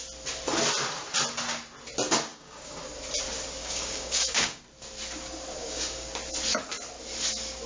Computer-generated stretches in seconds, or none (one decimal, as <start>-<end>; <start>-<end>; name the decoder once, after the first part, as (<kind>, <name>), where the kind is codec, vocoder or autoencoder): 2.3-2.8 (codec, DAC); 3.6-4.6; 5.6-6.1